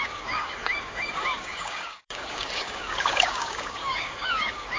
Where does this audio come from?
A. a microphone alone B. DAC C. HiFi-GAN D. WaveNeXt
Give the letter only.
B